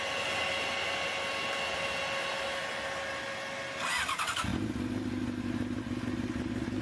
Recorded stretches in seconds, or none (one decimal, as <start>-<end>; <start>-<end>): 0.0-6.8